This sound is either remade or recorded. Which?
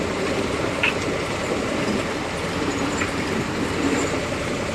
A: remade